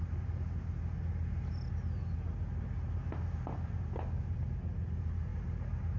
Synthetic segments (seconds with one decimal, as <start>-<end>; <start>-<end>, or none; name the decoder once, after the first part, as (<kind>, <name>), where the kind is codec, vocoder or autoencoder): none